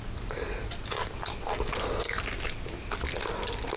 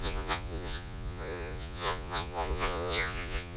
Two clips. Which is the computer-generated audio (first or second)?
second